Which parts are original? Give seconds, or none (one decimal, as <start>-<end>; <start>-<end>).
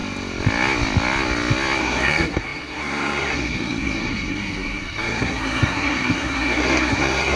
0.0-1.8